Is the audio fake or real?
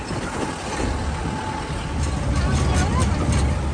real